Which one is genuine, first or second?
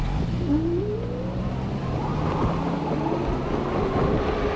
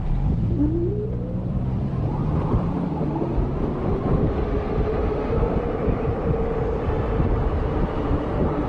first